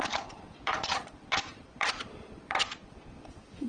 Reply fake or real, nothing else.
fake